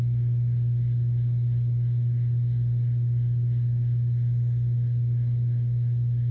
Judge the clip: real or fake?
real